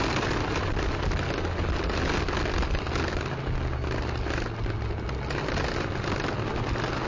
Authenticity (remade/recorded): recorded